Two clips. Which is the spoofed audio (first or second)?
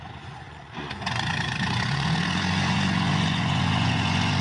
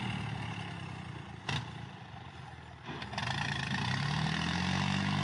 first